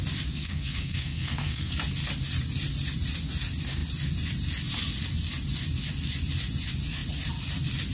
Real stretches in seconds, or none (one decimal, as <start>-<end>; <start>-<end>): 0.0-0.4; 1.7-7.9